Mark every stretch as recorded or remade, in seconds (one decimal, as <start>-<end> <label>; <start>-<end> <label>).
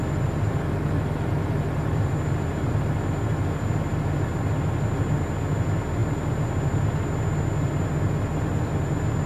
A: 0.0-9.3 recorded